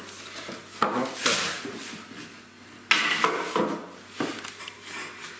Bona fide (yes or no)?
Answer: yes